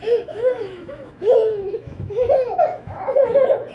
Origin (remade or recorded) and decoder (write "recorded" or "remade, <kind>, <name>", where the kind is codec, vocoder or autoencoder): remade, autoencoder, DAC-VAE